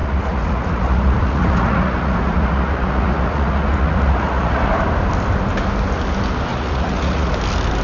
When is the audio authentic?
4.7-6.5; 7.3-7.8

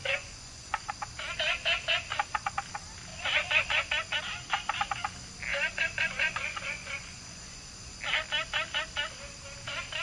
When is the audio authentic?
0.9-5.5; 8.0-10.0

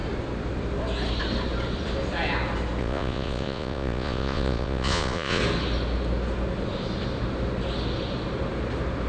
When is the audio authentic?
0.0-2.8; 5.4-9.1